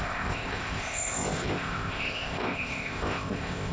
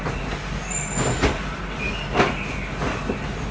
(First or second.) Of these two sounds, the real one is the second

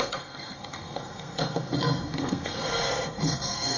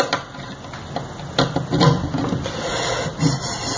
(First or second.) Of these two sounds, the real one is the second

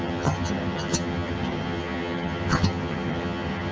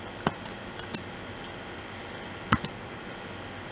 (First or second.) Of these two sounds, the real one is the second